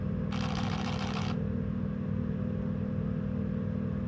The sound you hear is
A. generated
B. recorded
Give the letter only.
B